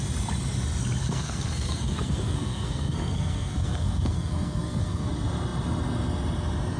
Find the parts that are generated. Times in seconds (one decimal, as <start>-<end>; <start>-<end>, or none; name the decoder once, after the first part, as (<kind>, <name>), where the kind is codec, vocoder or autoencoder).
1.0-5.1 (codec, SNAC)